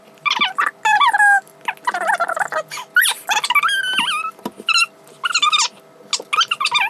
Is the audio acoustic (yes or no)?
yes